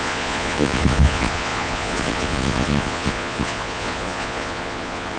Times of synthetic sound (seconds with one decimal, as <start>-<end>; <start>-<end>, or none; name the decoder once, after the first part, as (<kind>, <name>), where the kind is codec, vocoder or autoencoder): 0.0-5.2 (vocoder, Vocos)